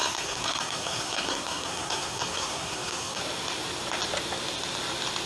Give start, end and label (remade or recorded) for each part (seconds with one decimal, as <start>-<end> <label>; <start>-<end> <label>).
0.0-3.2 remade; 3.2-5.3 recorded